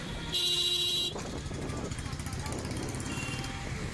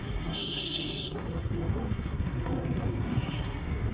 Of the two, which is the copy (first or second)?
second